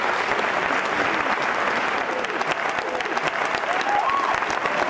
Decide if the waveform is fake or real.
real